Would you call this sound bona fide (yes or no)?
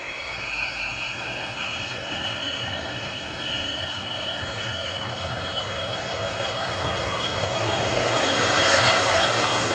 no